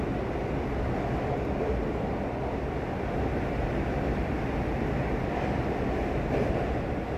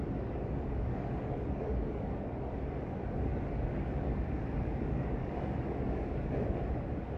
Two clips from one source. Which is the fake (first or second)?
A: second